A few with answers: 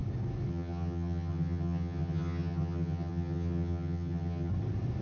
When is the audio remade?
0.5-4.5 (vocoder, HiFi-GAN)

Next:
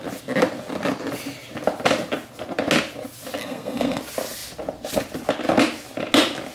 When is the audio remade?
3.4-4.0 (codec, SNAC)

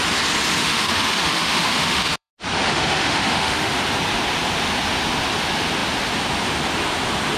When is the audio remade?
0.6-2.3 (autoencoder, DAC-VAE); 2.7-3.8

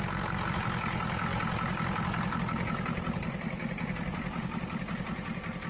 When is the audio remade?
none